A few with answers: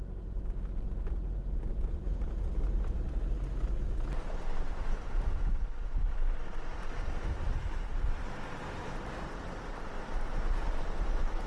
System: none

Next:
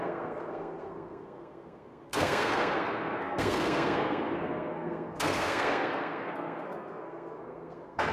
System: codec, SNAC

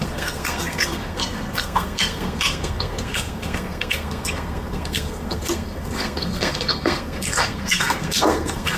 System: codec, SNAC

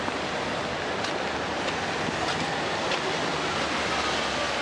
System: none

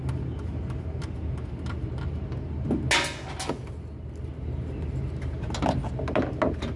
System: none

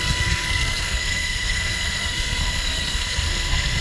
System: codec, SNAC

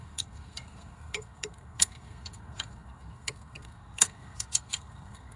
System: codec, SNAC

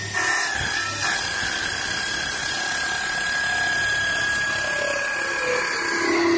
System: none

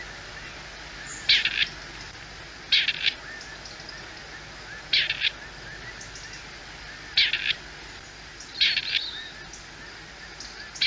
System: none